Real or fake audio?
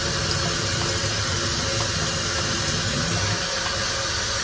real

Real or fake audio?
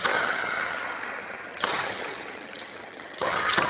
fake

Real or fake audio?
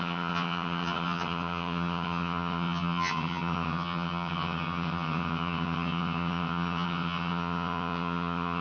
fake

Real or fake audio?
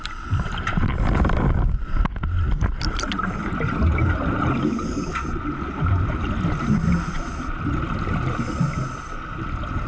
real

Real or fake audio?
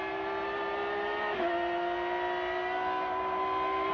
real